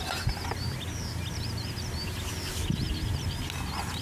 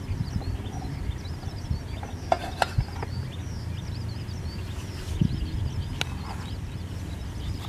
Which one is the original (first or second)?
first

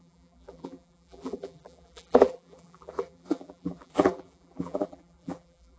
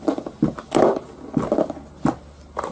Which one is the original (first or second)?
second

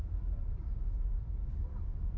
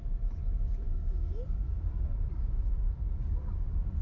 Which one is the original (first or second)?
first